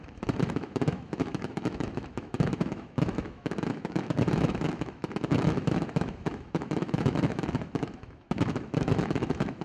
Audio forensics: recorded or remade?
remade